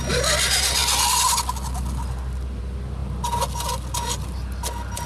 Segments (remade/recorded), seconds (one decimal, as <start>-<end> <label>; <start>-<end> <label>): 0.0-5.1 recorded